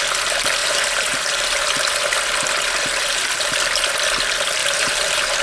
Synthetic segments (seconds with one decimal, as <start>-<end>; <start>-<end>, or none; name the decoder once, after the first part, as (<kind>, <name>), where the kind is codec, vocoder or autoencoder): 0.6-1.7 (vocoder, BigVGAN v2); 4.6-5.4